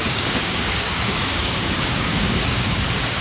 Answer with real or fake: fake